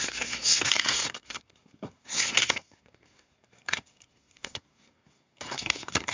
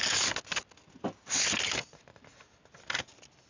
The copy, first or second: first